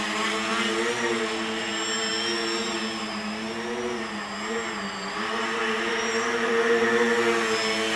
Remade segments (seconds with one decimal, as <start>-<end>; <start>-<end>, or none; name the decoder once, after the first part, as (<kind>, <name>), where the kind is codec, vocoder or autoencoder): none

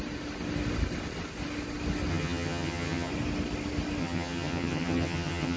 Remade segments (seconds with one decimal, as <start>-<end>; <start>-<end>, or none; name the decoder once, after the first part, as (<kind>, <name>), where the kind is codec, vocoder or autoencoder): 2.1-3.1 (vocoder, HiFi-GAN); 4.0-5.6